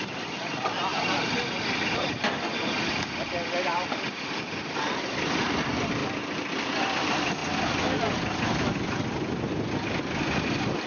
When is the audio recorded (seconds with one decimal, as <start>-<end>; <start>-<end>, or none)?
0.0-3.7; 5.0-6.0; 6.7-10.9